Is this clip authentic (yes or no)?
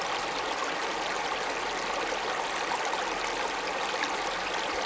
yes